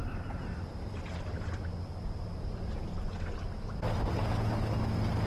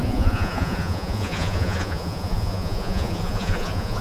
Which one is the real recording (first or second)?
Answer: first